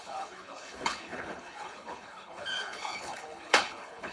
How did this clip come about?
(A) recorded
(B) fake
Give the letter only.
B